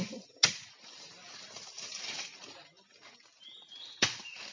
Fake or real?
real